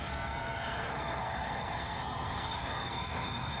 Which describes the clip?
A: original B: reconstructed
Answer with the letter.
B